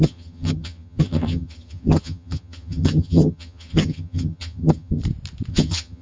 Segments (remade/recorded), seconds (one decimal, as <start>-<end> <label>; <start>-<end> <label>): 0.0-5.0 remade; 5.0-5.5 recorded; 5.5-6.0 remade

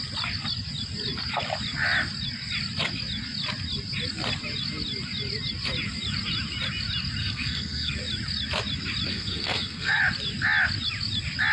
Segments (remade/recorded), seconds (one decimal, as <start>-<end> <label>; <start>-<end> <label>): 0.0-7.2 recorded; 7.2-8.0 remade; 8.0-9.1 recorded; 9.1-10.0 remade; 10.0-11.5 recorded

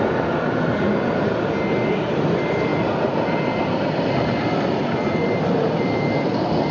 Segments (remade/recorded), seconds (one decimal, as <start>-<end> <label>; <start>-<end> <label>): 0.0-6.7 recorded

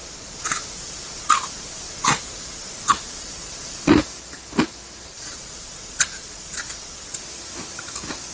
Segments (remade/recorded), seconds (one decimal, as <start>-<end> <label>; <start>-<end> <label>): 0.0-3.9 remade; 3.9-5.1 recorded; 5.1-7.2 remade; 7.2-8.3 recorded

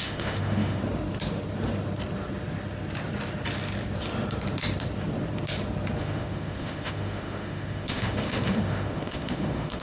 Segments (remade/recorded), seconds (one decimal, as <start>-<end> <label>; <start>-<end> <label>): 0.0-0.8 remade; 0.8-6.0 recorded; 6.0-9.8 remade

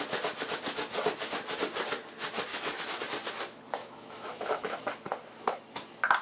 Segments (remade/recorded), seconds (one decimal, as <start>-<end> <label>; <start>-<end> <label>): 0.0-2.5 recorded; 2.5-3.0 remade; 3.0-3.8 recorded; 3.8-4.9 remade; 4.9-6.2 recorded

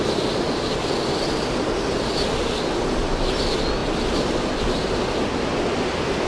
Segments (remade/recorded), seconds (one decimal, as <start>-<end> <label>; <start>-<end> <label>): 0.0-6.3 recorded

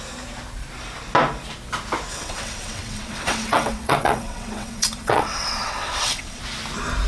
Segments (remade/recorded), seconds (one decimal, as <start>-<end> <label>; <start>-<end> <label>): 0.0-2.1 recorded; 2.1-6.4 remade; 6.4-7.1 recorded